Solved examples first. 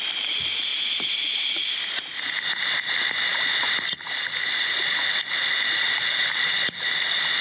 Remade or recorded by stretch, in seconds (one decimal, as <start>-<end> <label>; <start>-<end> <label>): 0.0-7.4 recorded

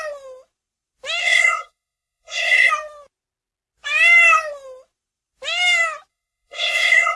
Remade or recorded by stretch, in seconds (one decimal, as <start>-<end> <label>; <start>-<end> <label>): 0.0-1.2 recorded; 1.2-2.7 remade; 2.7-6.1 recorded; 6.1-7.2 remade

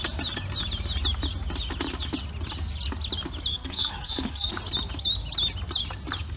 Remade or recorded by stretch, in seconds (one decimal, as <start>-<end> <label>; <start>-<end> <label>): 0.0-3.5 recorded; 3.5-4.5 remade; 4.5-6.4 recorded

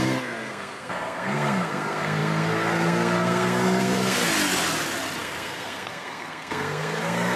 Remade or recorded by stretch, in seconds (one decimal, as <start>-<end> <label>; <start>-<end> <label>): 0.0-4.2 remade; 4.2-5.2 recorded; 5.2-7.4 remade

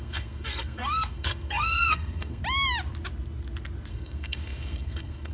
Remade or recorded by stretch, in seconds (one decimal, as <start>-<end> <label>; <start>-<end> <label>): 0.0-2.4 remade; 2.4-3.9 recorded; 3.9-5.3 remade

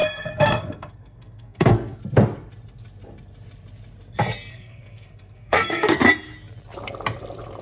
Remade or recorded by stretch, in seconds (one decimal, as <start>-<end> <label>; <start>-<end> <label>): 0.0-2.0 remade; 2.0-4.5 recorded; 4.5-6.0 remade; 6.0-7.6 recorded

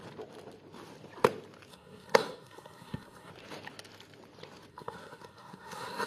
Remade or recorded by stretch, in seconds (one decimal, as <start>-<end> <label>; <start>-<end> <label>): 0.0-1.7 recorded; 1.7-3.3 remade; 3.3-4.7 recorded; 4.7-6.1 remade